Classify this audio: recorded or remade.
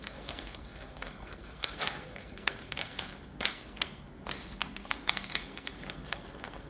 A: remade